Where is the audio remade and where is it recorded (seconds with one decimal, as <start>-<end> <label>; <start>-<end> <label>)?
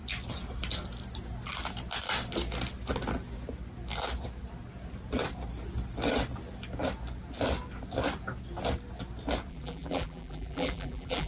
0.0-9.5 recorded; 9.5-11.3 remade